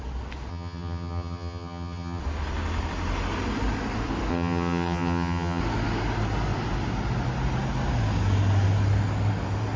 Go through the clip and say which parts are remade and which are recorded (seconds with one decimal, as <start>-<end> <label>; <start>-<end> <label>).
0.0-0.5 recorded; 0.5-2.2 remade; 2.2-4.3 recorded; 4.3-5.6 remade; 5.6-9.8 recorded